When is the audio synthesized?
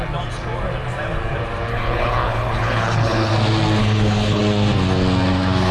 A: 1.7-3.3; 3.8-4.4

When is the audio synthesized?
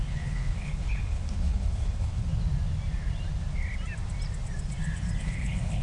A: 0.0-2.3; 5.2-5.8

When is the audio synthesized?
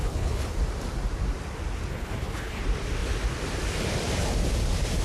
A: 0.0-0.6; 1.9-2.6